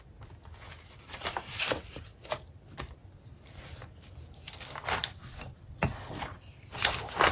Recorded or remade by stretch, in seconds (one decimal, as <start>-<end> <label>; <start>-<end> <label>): 0.0-7.3 recorded